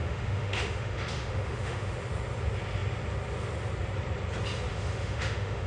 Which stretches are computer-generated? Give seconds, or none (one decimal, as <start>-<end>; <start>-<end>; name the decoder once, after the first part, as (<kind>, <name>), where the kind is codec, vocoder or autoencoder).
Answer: 0.0-1.9 (autoencoder, DAC-VAE); 4.7-5.7

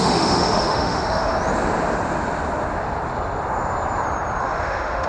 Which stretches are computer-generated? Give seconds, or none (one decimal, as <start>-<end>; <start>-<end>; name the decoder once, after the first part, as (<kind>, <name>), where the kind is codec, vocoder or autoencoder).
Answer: 0.0-1.3 (autoencoder, DAC-VAE); 4.4-5.1

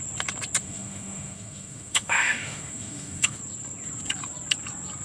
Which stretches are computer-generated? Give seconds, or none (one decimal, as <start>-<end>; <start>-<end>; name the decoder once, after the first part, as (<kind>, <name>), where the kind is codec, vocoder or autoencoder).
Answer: 0.6-3.4 (autoencoder, DAC-VAE)

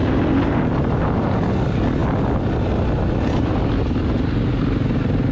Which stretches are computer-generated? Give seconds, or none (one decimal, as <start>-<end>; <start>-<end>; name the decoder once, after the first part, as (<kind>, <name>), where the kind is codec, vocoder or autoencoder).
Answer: none

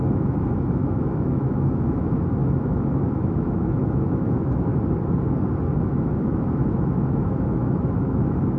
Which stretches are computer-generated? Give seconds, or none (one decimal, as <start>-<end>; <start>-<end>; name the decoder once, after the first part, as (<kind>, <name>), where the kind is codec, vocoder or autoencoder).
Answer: 0.0-4.7 (autoencoder, DAC-VAE); 5.8-8.6

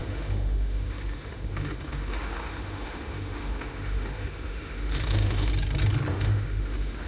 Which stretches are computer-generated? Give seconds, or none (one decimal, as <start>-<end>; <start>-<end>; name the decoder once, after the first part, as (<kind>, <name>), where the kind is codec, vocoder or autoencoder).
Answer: 0.0-5.5 (autoencoder, DAC-VAE); 6.1-7.1